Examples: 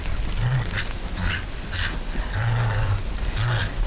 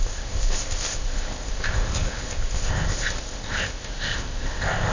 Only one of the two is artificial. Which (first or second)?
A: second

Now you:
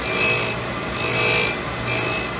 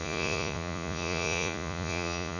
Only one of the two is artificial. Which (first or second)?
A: second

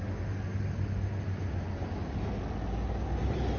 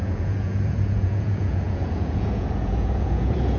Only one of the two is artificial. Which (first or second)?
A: second